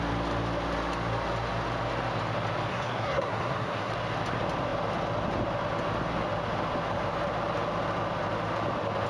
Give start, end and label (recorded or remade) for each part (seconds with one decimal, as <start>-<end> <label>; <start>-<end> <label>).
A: 0.0-2.7 recorded; 2.7-3.9 remade; 3.9-9.1 recorded